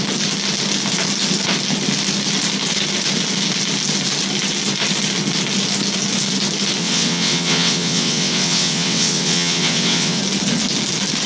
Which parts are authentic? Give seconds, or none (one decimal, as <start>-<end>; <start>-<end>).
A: 0.0-6.8; 10.2-11.3